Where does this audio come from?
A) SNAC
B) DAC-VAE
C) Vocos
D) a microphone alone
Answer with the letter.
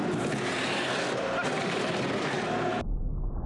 D